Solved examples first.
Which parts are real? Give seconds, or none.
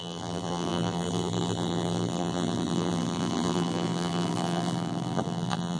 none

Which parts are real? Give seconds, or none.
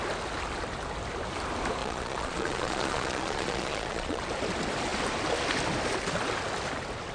0.0-1.8; 4.2-7.1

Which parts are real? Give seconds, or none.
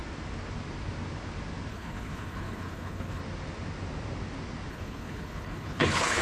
0.0-1.7; 3.2-4.7